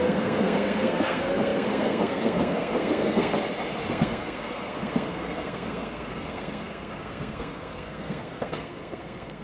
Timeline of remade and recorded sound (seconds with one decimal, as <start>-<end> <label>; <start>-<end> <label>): 0.0-3.3 remade; 3.3-3.9 recorded; 3.9-9.4 remade